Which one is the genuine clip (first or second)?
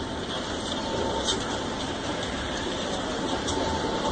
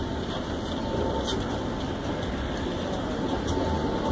second